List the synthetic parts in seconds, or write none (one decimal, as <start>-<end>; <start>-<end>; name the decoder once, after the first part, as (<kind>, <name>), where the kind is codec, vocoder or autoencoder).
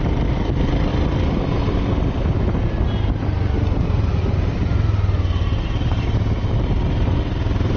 none